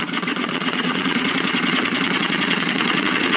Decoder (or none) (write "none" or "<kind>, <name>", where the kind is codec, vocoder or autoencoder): vocoder, Vocos